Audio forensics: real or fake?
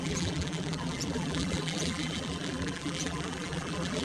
fake